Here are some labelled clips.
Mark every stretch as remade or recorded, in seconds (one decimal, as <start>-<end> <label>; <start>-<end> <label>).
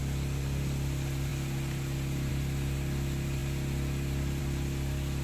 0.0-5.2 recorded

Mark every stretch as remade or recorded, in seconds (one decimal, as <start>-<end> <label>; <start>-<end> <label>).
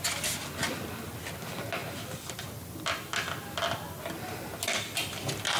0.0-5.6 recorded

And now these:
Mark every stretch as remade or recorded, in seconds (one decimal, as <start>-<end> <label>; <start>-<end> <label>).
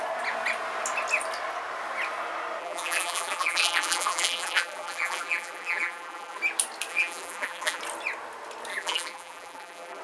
0.0-2.6 recorded; 2.6-6.4 remade; 6.4-6.9 recorded; 6.9-7.8 remade; 7.8-8.7 recorded; 8.7-10.0 remade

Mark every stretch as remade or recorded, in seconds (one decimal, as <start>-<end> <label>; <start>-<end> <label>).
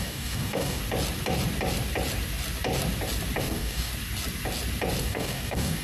0.0-0.8 remade; 0.8-3.4 recorded; 3.4-3.9 remade; 3.9-5.0 recorded; 5.0-5.8 remade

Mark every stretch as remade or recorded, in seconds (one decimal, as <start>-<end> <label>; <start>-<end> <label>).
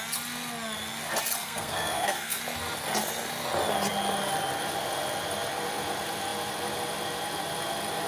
0.0-1.4 recorded; 1.4-2.4 remade; 2.4-8.1 recorded